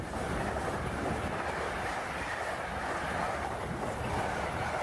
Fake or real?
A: real